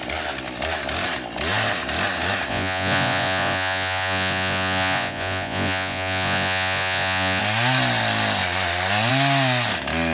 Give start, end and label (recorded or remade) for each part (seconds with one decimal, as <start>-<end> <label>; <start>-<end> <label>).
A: 0.0-2.5 recorded; 2.5-7.4 remade; 7.4-10.1 recorded